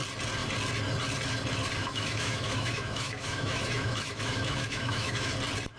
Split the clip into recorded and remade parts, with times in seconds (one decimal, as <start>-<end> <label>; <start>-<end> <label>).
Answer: 0.0-1.8 recorded; 1.8-5.3 remade; 5.3-5.8 recorded